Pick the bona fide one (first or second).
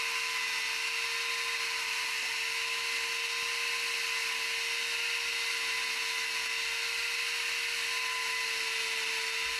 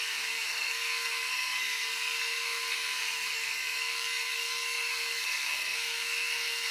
first